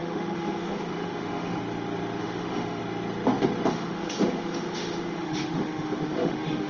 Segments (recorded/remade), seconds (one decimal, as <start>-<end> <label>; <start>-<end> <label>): 0.0-1.6 remade; 1.6-2.2 recorded; 2.2-2.8 remade; 2.8-3.7 recorded; 3.7-6.7 remade